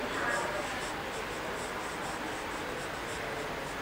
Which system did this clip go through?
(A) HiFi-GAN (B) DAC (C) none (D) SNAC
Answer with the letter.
C